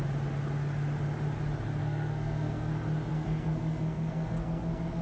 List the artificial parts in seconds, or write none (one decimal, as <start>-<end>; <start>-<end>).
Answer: 1.8-2.7; 3.1-5.0

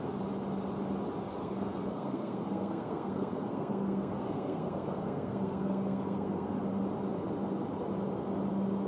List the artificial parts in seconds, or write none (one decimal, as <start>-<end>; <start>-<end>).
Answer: 1.4-6.6